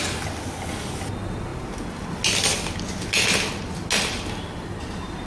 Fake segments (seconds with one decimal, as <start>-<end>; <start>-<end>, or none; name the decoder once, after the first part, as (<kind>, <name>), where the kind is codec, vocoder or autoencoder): none